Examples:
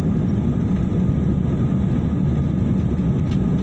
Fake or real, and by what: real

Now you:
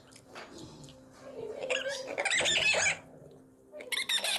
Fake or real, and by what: real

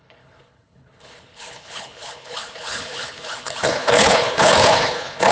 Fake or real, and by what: fake, codec, HILCodec